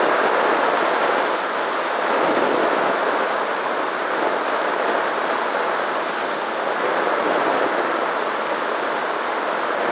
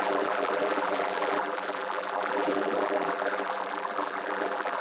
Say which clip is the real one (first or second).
first